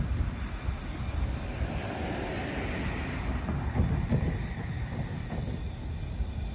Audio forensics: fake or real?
real